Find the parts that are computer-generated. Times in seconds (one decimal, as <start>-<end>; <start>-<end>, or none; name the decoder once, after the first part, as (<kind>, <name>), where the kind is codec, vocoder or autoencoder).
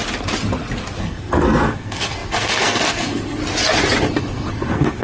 1.0-3.4 (codec, SNAC); 4.2-5.0